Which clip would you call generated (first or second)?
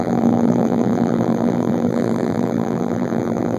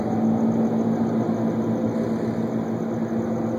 first